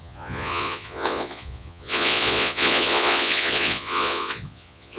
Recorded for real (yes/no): no